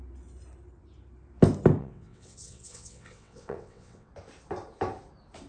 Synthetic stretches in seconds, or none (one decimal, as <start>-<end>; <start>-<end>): 1.8-4.1